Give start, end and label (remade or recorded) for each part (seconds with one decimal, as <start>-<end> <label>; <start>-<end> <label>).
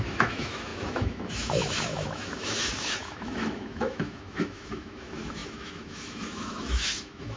0.0-7.4 remade